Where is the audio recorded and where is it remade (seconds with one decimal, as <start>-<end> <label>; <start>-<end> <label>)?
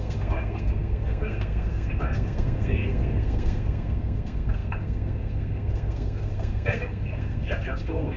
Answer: 0.0-8.2 remade